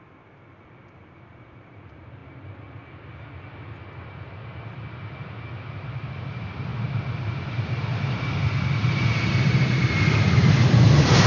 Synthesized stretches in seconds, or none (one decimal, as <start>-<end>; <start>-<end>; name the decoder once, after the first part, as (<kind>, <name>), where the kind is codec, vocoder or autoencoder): 0.0-2.2 (vocoder, BigVGAN v2); 5.9-11.3